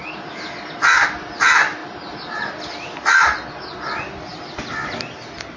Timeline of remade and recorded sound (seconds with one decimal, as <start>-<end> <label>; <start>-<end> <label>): 0.0-5.6 recorded